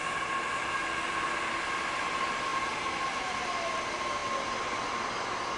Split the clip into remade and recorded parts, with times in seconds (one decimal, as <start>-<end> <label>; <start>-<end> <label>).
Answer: 0.0-5.6 recorded